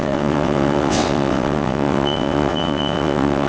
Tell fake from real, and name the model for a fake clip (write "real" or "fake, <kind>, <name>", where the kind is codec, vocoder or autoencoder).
fake, vocoder, WaveNeXt